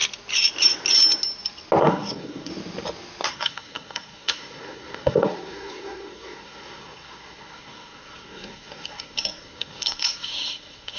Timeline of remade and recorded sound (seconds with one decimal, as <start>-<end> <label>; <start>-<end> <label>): 0.0-1.8 recorded; 1.8-2.5 remade; 2.5-3.3 recorded; 3.3-11.0 remade